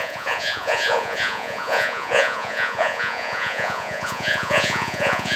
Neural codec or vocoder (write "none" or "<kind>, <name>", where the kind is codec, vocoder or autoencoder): vocoder, Vocos